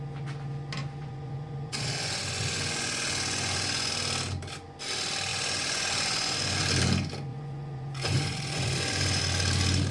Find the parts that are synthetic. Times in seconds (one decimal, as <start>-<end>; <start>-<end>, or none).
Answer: 1.0-3.9; 5.3-6.6; 7.3-9.2